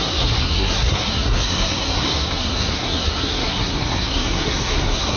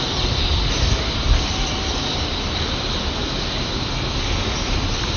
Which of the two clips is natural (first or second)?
second